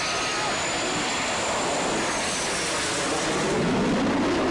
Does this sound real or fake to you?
real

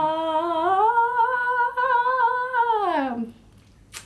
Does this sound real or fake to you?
real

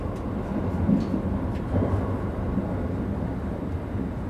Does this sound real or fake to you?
real